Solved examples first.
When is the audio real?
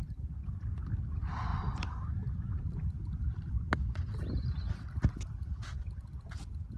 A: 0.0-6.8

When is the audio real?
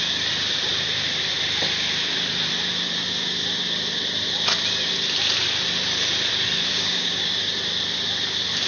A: 0.0-6.7; 7.5-8.7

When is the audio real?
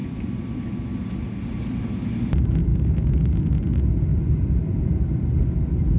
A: 0.0-2.7; 3.3-6.0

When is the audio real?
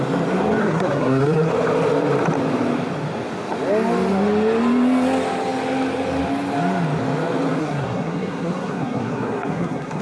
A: 0.0-0.6; 1.5-7.6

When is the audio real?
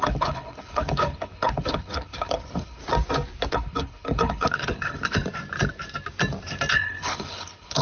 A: 2.8-3.5; 5.2-6.7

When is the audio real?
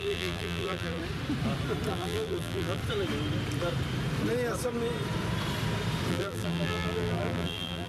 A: 1.0-1.9; 2.8-6.1